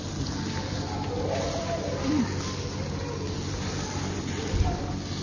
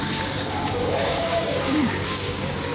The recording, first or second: first